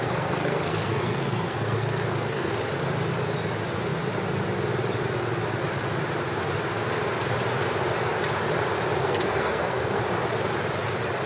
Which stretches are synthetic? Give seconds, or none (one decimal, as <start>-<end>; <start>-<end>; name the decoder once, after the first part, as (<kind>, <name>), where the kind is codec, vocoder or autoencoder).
0.0-2.5 (codec, SNAC); 9.0-10.0